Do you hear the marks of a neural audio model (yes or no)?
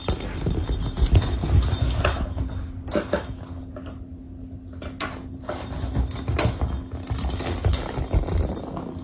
no